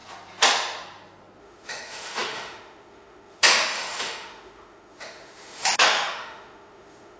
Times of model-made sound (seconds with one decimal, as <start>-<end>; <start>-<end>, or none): 1.4-7.2